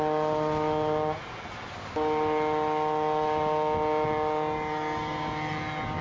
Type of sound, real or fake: real